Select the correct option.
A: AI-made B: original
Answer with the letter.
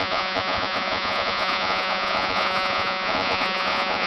A